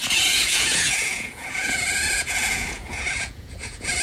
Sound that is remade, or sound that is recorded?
remade